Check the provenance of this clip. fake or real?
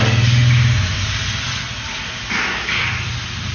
real